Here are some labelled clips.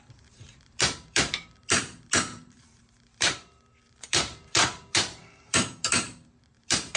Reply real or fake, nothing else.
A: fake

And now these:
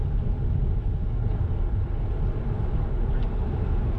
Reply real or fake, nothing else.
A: real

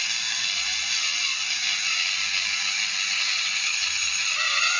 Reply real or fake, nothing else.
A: real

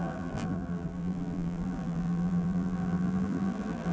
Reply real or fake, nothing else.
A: fake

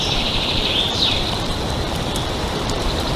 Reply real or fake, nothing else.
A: fake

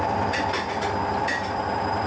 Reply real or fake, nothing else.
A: fake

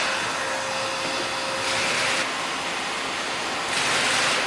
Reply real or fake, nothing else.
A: real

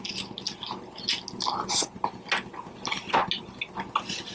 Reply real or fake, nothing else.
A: real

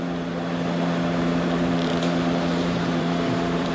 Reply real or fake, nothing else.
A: fake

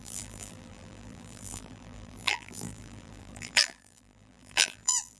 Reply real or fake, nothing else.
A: fake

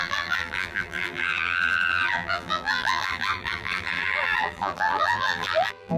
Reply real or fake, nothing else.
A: fake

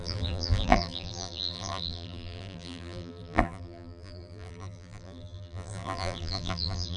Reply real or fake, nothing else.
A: fake